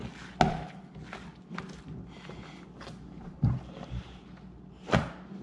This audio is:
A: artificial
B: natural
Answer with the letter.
B